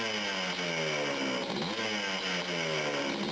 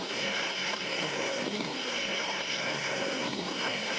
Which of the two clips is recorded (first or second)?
first